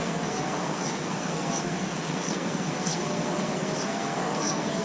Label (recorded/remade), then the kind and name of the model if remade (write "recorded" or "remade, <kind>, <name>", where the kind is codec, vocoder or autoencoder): remade, codec, SNAC